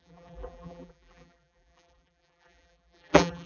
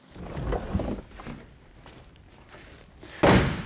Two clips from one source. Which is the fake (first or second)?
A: first